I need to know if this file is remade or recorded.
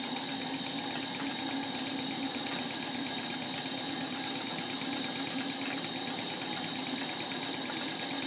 recorded